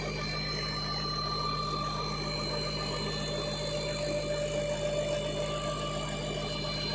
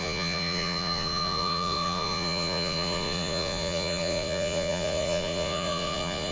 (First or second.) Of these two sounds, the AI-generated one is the second